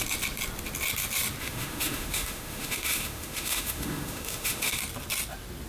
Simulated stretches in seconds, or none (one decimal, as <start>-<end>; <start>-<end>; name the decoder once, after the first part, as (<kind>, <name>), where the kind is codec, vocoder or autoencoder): 1.4-4.8 (autoencoder, DAC-VAE)